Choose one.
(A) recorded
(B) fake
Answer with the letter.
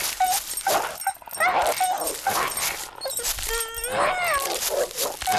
A